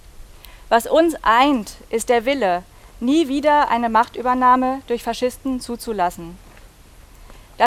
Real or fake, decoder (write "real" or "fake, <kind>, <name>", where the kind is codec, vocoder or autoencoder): real